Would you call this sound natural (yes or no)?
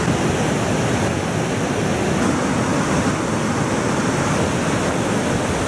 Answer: yes